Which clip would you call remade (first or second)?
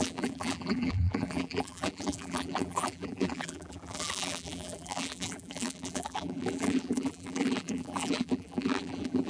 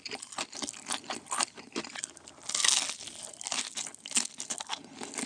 first